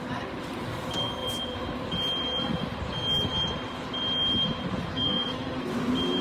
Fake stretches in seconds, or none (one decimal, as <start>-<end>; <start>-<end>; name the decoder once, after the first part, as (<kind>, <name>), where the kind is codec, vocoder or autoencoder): 4.9-5.7 (codec, SNAC)